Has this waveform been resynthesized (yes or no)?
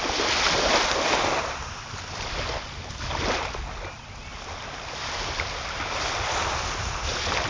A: no